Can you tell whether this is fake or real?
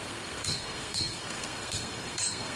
fake